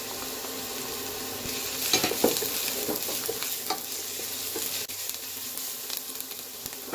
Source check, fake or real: real